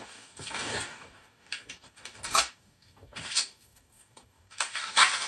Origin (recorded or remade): remade